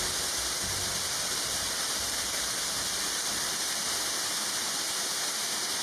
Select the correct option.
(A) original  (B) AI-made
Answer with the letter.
A